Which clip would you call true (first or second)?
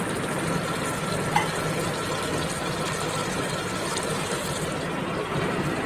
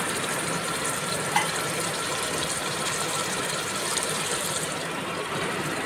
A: first